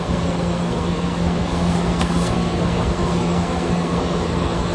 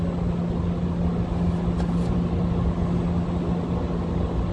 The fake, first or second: first